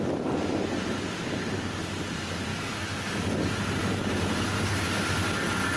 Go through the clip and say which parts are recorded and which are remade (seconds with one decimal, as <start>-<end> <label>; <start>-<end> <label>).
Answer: 0.0-2.5 recorded; 2.5-3.2 remade; 3.2-5.8 recorded